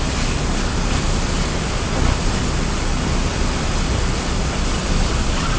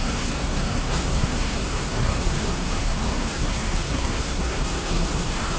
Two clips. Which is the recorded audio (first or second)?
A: first